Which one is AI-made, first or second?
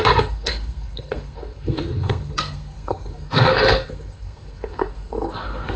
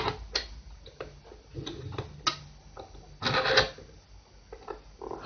first